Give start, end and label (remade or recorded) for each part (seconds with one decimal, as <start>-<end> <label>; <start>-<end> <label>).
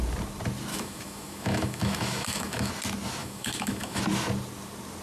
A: 0.0-0.7 recorded; 0.7-2.7 remade; 2.7-3.2 recorded; 3.2-4.0 remade; 4.0-5.0 recorded